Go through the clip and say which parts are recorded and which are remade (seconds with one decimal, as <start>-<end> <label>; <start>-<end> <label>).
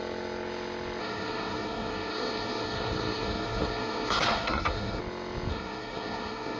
0.0-1.0 recorded; 1.0-5.0 remade; 5.0-5.5 recorded; 5.5-6.6 remade